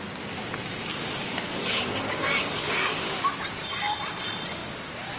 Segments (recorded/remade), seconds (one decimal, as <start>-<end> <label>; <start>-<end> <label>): 0.0-0.9 recorded; 0.9-3.2 remade; 3.2-5.2 recorded